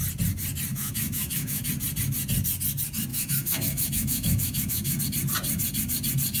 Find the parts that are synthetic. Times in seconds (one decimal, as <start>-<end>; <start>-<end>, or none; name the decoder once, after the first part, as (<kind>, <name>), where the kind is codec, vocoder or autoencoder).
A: 0.7-1.7 (autoencoder, DAC-VAE); 3.1-5.0